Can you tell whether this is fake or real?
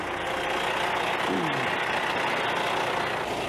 real